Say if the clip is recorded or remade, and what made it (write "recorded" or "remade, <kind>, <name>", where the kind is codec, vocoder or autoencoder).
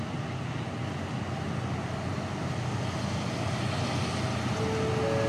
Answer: recorded